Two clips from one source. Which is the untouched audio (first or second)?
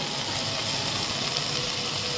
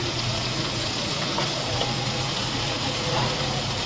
first